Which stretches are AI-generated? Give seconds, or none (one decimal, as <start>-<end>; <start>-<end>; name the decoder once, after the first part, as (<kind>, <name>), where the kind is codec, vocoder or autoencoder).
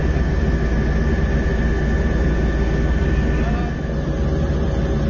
none